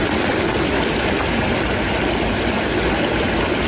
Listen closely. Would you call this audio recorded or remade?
recorded